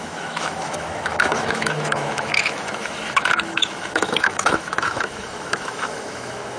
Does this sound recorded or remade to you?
remade